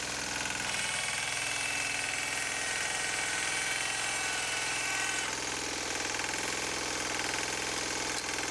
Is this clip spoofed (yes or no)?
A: no